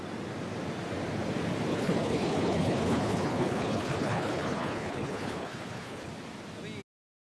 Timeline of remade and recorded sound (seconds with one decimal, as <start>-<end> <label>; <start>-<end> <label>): 0.0-1.7 recorded; 1.7-6.1 remade; 6.1-7.3 recorded

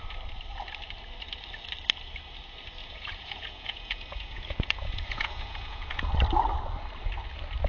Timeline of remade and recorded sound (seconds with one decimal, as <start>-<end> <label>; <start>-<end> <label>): 0.0-2.8 recorded; 2.8-6.0 remade; 6.0-7.7 recorded

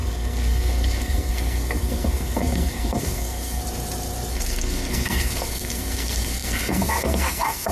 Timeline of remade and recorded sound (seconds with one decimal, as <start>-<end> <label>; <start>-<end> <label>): 0.0-3.6 remade; 3.6-4.3 recorded; 4.3-7.7 remade

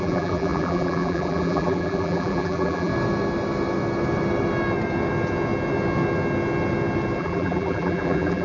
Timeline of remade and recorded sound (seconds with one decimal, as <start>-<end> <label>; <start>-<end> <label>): 0.0-2.9 remade; 2.9-7.2 recorded; 7.2-8.4 remade

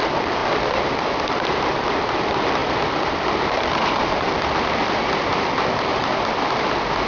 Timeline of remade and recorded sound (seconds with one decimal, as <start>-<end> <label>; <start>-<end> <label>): 0.0-7.1 remade

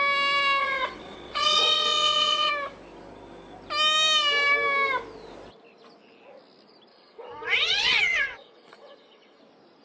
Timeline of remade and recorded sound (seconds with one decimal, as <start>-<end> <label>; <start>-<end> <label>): 0.0-0.6 recorded; 0.6-2.5 remade; 2.5-6.9 recorded; 6.9-9.4 remade; 9.4-9.8 recorded

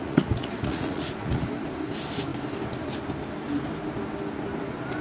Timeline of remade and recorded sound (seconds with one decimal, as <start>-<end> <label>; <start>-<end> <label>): 0.0-1.6 remade; 1.6-5.0 recorded